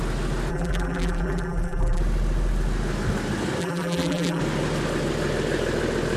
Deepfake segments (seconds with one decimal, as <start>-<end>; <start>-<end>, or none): 0.5-2.0; 3.6-4.4